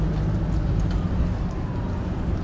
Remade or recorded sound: recorded